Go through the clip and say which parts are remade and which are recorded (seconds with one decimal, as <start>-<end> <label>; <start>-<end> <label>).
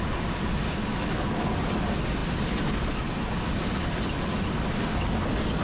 0.0-0.9 recorded; 0.9-1.5 remade; 1.5-5.6 recorded